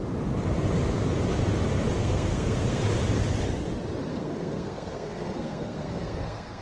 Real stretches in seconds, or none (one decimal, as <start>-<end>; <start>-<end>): 0.0-2.0; 2.8-4.1